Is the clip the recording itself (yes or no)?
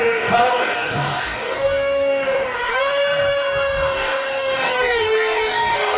no